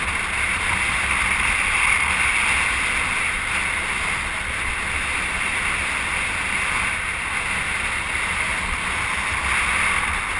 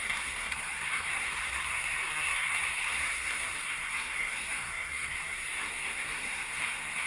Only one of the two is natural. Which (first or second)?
first